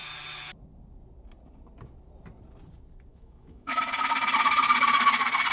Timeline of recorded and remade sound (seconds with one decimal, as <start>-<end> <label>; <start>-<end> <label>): 0.0-3.1 recorded; 3.1-3.8 remade; 3.8-5.5 recorded